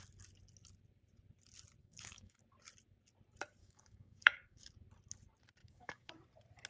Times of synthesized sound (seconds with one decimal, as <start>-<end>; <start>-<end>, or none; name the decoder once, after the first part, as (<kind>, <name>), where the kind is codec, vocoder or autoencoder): 1.8-2.4 (codec, DAC); 3.6-4.7; 5.6-6.1